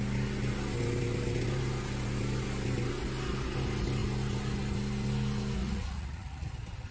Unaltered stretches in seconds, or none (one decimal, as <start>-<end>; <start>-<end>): 0.0-5.6; 6.5-6.9